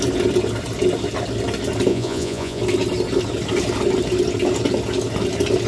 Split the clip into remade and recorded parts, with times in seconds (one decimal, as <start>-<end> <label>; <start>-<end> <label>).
0.0-1.9 recorded; 1.9-2.6 remade; 2.6-5.7 recorded